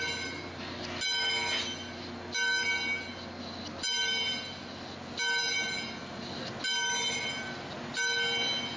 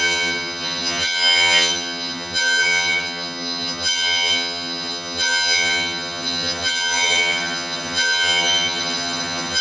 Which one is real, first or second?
first